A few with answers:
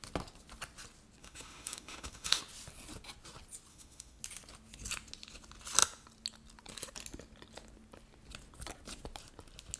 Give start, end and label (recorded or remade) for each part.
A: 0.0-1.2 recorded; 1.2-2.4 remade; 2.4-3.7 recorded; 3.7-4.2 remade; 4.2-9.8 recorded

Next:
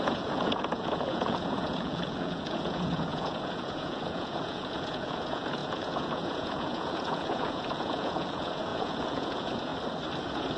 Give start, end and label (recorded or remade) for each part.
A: 0.0-9.7 remade; 9.7-10.2 recorded; 10.2-10.6 remade

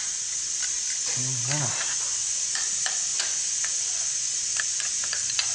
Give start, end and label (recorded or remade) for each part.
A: 0.0-3.1 recorded; 3.1-4.4 remade; 4.4-5.5 recorded

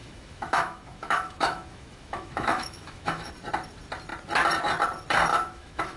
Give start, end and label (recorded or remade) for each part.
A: 0.0-3.3 remade; 3.3-5.3 recorded; 5.3-6.0 remade

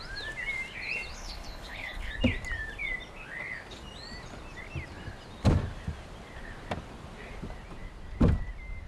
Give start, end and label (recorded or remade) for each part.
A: 0.0-1.1 recorded; 1.1-2.1 remade; 2.1-8.9 recorded

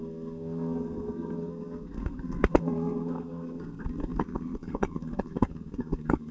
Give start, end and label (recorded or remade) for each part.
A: 0.0-6.3 remade

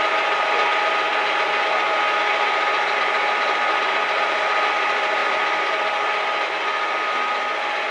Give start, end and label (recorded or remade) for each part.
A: 0.0-7.9 recorded